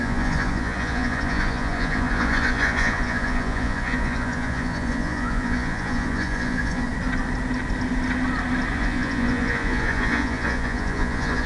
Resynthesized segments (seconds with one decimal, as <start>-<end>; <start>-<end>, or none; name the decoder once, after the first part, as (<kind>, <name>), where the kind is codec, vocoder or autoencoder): 0.0-6.9 (vocoder, Vocos); 8.7-11.5